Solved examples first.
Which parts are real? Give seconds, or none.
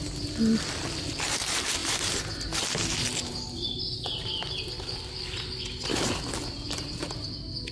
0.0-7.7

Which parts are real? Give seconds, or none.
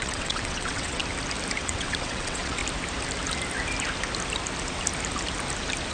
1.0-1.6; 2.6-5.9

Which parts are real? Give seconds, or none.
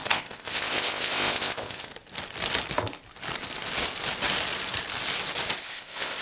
1.9-5.6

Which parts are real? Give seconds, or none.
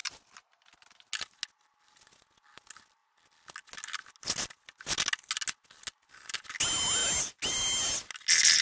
0.0-8.6